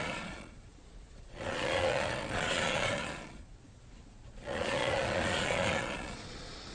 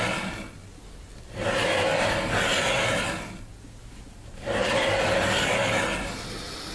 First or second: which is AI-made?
first